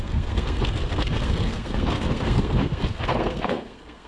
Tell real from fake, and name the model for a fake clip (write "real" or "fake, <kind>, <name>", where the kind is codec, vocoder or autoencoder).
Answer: fake, codec, SNAC